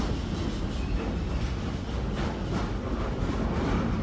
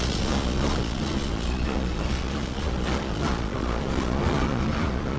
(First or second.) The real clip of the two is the first